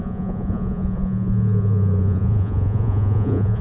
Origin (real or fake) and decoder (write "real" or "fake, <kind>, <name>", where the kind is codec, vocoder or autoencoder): fake, vocoder, Vocos